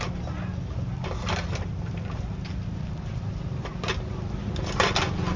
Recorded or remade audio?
recorded